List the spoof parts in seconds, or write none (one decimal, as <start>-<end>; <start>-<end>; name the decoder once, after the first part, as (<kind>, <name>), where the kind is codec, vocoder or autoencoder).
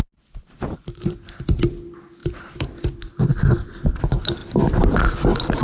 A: none